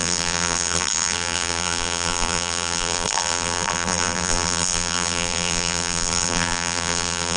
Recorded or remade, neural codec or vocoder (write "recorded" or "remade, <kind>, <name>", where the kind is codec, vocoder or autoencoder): remade, vocoder, BigVGAN v2